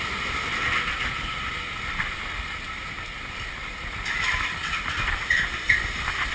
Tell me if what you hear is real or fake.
real